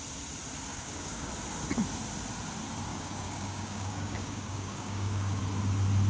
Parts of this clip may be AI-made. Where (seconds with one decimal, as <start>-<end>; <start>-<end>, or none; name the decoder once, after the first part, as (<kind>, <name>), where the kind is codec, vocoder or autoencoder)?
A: 0.7-1.3 (codec, DAC); 2.9-5.4